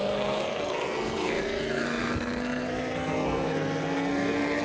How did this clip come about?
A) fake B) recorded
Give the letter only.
A